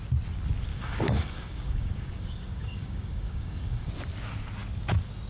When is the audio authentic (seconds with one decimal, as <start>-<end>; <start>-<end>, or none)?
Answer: 0.0-0.7; 3.9-5.3